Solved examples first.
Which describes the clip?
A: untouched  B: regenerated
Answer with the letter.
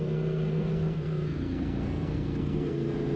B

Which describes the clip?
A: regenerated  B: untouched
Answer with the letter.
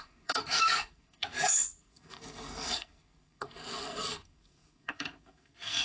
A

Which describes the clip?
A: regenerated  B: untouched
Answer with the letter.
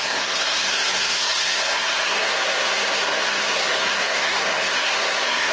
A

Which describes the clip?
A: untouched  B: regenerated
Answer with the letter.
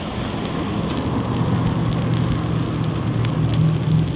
A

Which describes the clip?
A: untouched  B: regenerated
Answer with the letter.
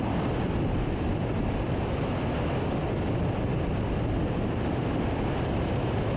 A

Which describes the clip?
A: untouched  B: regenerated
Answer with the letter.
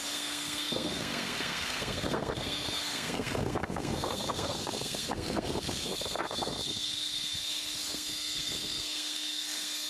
B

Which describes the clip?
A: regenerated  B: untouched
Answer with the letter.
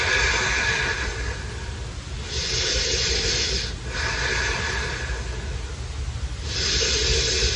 B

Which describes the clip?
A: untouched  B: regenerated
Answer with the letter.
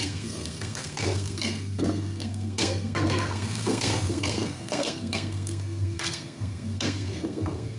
B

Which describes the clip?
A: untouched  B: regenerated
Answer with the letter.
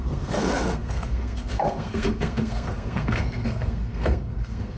B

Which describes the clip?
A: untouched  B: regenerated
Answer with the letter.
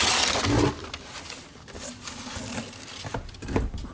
A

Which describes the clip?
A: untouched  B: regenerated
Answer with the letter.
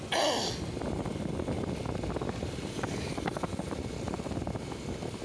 A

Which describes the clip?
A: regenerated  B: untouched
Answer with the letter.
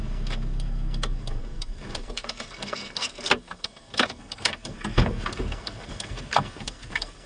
A